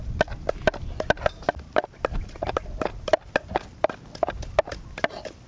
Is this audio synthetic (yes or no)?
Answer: no